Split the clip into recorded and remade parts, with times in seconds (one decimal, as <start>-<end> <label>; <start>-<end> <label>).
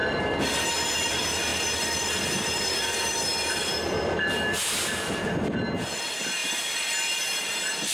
0.0-1.5 recorded; 1.5-5.2 remade; 5.2-6.4 recorded; 6.4-6.9 remade; 6.9-7.9 recorded